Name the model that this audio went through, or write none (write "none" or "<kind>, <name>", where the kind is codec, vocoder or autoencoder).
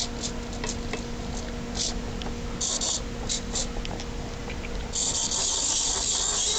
none